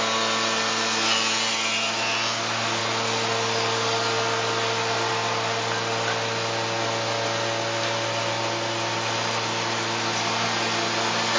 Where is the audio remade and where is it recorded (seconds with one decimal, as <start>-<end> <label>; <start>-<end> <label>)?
0.0-11.4 recorded